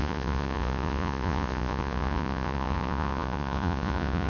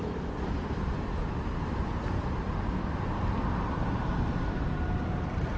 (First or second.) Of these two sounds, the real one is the second